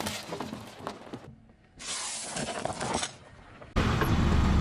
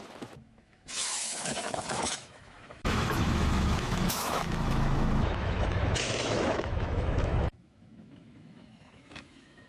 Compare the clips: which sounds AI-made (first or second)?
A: second